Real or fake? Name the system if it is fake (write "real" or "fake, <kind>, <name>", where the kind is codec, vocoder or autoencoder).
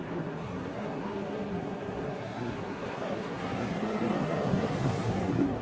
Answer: fake, codec, SNAC